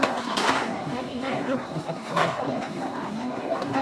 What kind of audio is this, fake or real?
fake